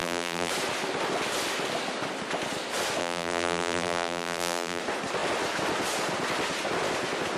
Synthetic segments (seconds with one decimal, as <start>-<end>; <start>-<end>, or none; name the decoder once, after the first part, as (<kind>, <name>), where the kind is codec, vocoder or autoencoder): 0.0-0.5 (vocoder, BigVGAN v2); 3.0-4.8